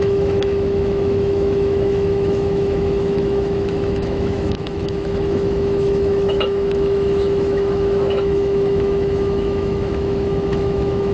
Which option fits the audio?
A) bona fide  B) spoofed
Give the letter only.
B